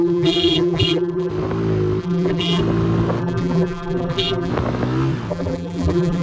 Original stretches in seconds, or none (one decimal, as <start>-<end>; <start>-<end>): 1.3-2.0; 2.6-3.2; 4.5-5.3